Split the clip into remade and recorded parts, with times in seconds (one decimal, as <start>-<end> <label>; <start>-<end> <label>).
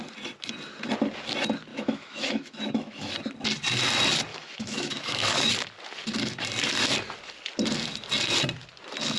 0.0-1.7 recorded; 1.7-3.1 remade; 3.1-4.3 recorded; 4.3-5.5 remade; 5.5-9.2 recorded